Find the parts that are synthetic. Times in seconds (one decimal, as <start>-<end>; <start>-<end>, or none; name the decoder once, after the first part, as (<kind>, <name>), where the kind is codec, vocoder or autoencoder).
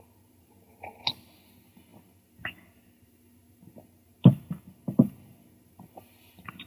none